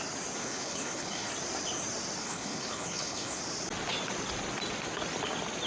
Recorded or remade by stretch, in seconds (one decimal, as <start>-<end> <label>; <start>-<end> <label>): 0.0-0.4 recorded; 0.4-1.3 remade; 1.3-2.2 recorded; 2.2-3.4 remade; 3.4-5.7 recorded